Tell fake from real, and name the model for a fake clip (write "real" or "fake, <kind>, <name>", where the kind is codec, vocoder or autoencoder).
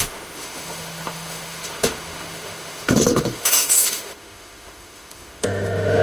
fake, autoencoder, DAC-VAE